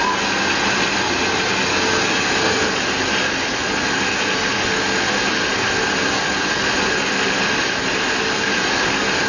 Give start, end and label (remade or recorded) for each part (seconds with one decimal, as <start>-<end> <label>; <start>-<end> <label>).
0.0-9.3 recorded